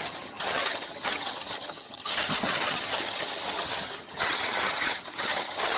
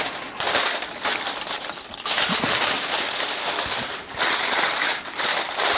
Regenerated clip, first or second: first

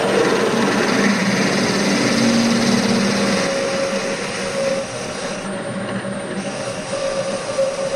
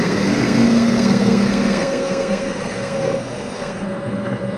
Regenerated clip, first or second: second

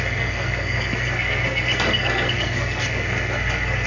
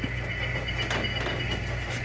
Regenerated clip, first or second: first